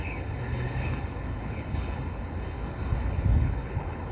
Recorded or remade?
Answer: remade